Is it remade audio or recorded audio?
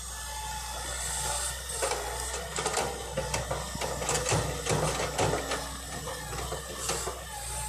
recorded